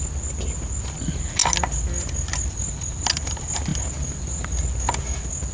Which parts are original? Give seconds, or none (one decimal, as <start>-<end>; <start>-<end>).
0.0-5.5